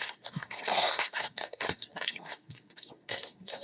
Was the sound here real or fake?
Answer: fake